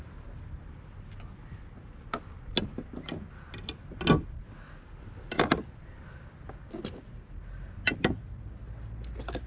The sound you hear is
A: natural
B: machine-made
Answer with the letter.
A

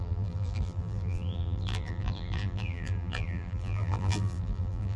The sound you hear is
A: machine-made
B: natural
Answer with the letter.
A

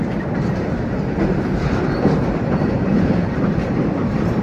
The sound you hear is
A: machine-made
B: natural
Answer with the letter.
A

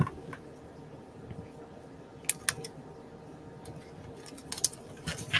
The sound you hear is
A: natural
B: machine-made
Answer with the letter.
A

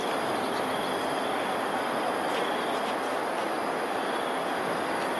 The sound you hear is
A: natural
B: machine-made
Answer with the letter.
A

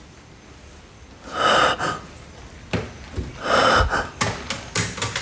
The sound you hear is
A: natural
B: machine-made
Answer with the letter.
A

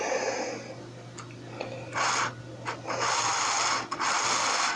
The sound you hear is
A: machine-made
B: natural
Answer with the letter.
B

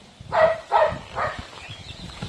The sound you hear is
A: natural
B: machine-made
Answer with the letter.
B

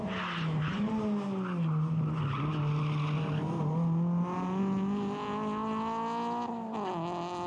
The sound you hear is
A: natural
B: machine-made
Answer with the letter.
A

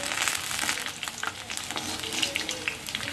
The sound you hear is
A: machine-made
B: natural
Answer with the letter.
B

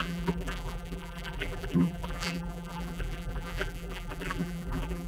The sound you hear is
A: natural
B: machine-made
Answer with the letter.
B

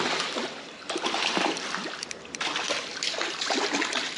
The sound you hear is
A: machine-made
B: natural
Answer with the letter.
A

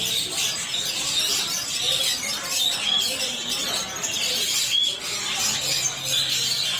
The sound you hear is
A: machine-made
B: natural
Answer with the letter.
B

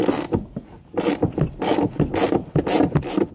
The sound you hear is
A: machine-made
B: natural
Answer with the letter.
B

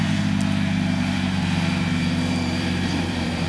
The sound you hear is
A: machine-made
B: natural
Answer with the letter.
A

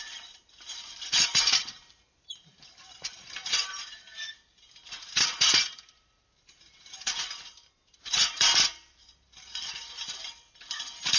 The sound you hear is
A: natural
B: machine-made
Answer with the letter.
B